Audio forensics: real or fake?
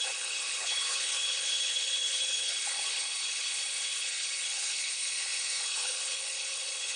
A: fake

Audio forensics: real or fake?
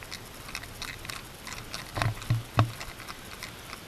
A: real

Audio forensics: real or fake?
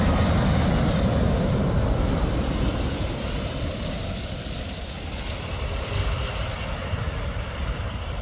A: real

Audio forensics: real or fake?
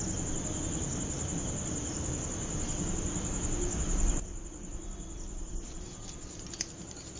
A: real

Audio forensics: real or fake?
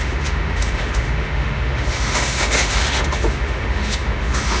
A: fake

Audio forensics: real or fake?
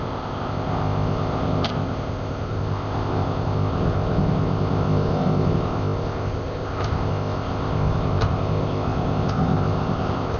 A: fake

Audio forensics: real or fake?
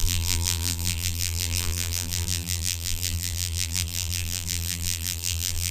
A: fake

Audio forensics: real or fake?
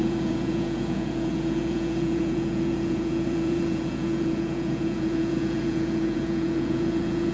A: fake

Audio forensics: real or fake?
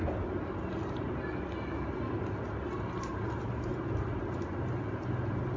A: real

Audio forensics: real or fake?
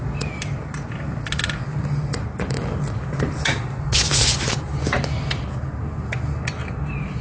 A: real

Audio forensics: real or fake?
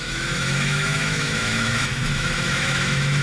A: fake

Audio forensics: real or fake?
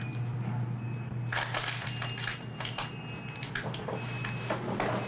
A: real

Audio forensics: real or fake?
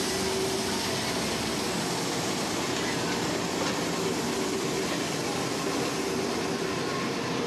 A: real